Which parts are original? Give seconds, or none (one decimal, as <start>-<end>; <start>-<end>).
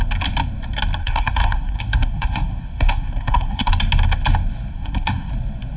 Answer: 0.0-1.0; 3.7-4.7; 5.3-5.8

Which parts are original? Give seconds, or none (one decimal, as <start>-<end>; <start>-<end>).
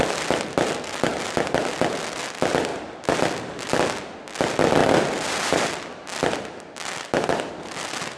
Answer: 0.0-4.8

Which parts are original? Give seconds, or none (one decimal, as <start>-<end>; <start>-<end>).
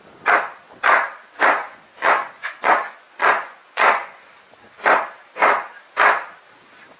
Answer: 0.0-1.6; 4.3-7.0